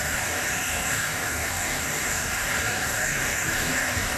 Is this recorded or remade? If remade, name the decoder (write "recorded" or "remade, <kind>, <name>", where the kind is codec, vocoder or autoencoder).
remade, codec, DAC